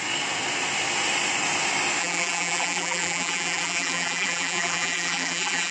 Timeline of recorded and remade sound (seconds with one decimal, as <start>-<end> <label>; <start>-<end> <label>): 0.0-2.0 recorded; 2.0-5.7 remade